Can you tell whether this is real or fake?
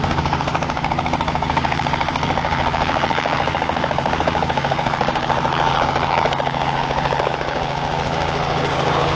fake